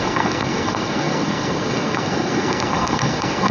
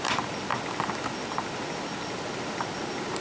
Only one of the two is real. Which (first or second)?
second